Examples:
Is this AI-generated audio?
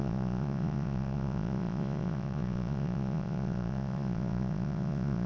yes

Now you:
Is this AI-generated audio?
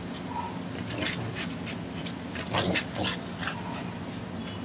no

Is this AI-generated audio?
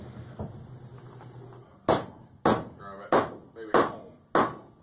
no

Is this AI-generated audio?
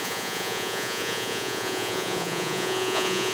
yes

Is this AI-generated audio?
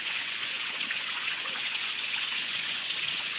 yes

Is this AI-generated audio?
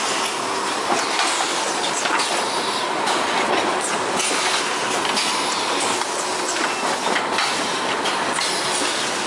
no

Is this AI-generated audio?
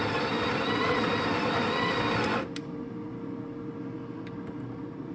no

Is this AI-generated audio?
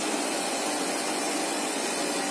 yes